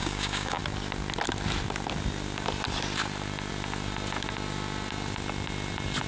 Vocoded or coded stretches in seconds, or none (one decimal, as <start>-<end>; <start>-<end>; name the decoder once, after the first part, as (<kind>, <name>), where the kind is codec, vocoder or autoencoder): 0.0-0.6 (codec, DAC)